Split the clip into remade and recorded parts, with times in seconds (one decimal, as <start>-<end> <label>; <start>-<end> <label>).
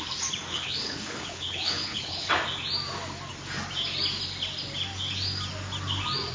0.0-0.5 recorded; 0.5-2.3 remade; 2.3-6.3 recorded